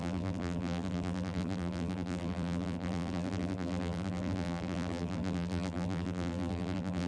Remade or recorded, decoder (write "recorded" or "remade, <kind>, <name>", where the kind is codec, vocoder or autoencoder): remade, vocoder, BigVGAN v2